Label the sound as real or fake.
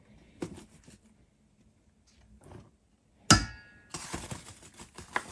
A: real